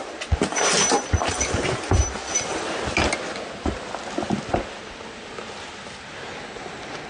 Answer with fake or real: real